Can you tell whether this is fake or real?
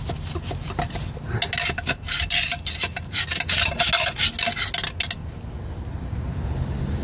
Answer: real